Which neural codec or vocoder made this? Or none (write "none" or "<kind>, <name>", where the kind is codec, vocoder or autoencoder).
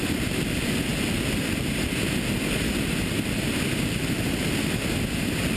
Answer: none